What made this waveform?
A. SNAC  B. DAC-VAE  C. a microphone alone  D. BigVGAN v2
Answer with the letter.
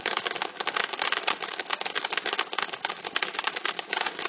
B